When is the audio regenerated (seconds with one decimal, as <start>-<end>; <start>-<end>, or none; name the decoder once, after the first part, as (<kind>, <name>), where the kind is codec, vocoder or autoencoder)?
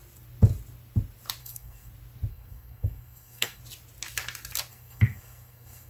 1.4-1.9 (codec, SNAC); 2.3-3.6; 4.7-5.9